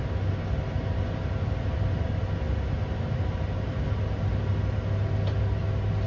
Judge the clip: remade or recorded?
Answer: recorded